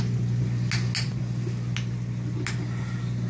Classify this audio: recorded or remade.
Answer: recorded